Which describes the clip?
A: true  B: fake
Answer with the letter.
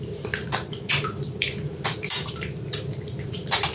B